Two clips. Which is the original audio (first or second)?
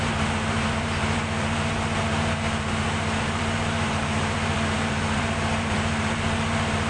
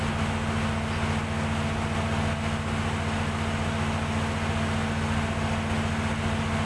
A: second